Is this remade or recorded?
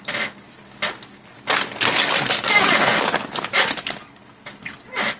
recorded